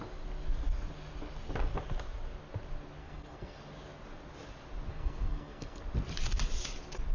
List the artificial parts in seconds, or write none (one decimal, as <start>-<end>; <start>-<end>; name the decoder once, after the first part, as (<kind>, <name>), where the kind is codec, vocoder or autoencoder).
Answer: 3.0-3.6 (codec, SNAC); 4.9-5.8